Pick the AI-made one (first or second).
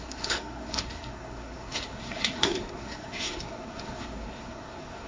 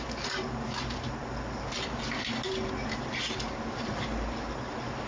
first